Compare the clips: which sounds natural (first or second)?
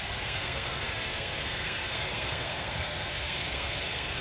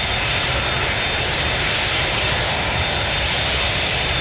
second